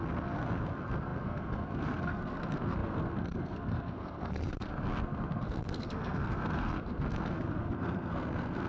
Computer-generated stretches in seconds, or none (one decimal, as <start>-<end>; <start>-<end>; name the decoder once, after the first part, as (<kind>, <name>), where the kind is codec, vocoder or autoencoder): 0.0-8.7 (codec, SNAC)